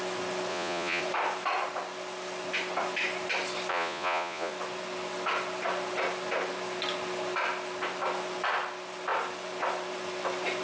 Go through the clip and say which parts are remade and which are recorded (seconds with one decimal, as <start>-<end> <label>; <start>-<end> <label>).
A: 0.0-0.5 recorded; 0.5-1.0 remade; 1.0-3.7 recorded; 3.7-4.5 remade; 4.5-10.6 recorded